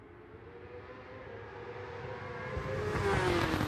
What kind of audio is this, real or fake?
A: real